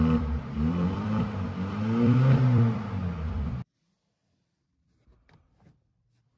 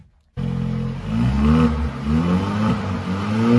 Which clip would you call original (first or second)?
second